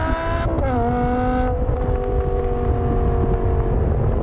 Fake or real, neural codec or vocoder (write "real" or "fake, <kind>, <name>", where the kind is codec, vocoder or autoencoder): real